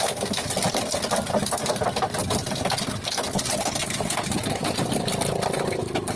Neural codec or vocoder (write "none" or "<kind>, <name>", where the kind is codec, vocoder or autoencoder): none